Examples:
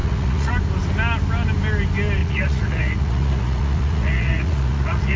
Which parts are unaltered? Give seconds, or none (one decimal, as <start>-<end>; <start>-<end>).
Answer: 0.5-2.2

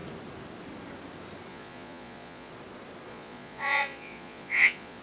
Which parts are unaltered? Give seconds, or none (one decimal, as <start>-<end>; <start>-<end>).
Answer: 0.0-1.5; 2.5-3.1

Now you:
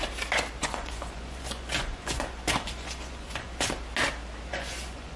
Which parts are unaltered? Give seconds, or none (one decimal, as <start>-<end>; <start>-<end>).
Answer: 0.0-0.6; 3.7-4.5

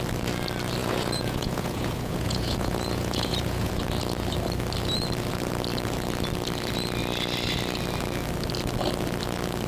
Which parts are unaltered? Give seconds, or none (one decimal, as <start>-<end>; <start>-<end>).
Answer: 0.0-0.8; 3.7-9.7

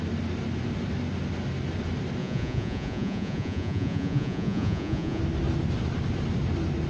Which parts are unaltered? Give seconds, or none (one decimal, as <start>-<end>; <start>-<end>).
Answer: 0.0-2.2; 5.2-6.9

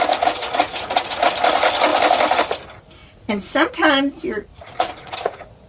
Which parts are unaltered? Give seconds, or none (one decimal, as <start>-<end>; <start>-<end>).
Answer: 0.0-0.4; 1.3-3.0; 3.5-4.5

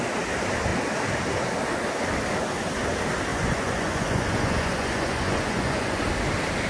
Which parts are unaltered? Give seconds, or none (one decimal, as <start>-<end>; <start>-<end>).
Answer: 0.0-3.3; 6.0-6.7